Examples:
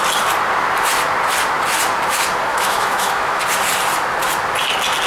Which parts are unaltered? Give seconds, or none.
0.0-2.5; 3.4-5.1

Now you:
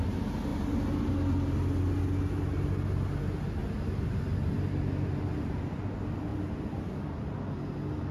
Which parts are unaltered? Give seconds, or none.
0.0-0.5; 1.1-3.6; 4.2-8.1